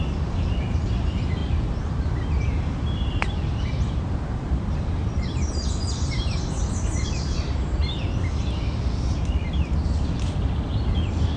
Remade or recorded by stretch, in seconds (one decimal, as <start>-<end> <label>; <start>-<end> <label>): 0.0-7.8 remade; 7.8-10.9 recorded; 10.9-11.4 remade